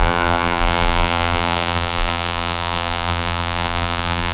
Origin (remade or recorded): remade